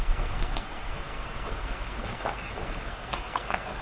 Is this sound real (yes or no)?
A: no